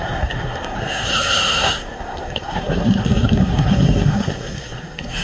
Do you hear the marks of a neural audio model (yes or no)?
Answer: yes